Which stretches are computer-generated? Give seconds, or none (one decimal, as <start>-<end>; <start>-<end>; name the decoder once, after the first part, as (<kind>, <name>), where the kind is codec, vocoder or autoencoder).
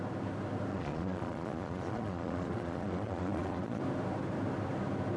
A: 0.7-3.8 (vocoder, Vocos)